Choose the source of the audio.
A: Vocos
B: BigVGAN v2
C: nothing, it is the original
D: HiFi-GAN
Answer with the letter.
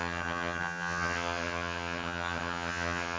D